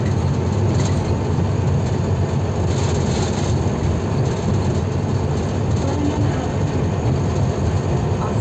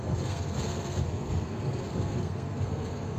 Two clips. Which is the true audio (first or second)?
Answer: first